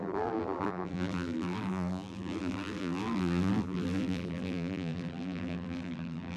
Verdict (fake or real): fake